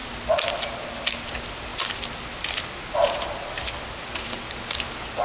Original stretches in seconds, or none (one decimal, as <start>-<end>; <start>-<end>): 0.0-5.2

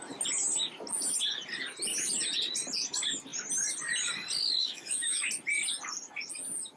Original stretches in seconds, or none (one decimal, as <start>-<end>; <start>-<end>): 0.0-4.6; 5.3-6.8

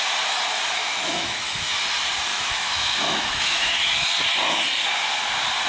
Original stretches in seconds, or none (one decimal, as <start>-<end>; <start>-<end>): 0.0-0.8; 1.8-2.3; 3.9-5.7

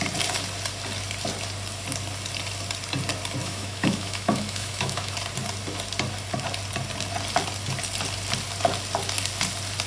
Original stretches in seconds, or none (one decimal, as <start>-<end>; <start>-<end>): 0.0-3.4; 5.1-9.9

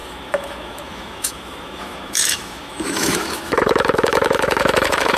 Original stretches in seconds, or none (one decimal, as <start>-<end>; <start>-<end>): none

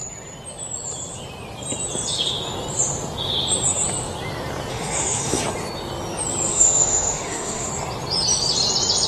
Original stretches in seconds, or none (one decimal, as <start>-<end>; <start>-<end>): 0.0-4.7; 5.4-6.5; 7.7-9.1

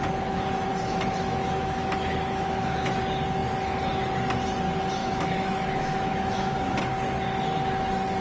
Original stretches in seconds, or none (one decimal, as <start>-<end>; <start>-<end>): 0.0-0.7; 3.0-5.0; 6.8-8.2

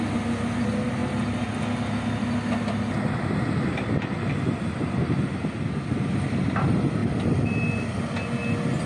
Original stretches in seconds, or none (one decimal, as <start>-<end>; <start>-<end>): 0.0-8.9